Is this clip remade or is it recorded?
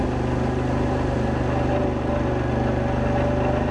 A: recorded